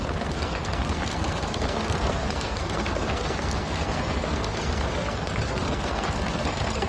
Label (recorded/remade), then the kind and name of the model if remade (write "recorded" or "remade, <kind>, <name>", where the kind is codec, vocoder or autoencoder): remade, codec, SNAC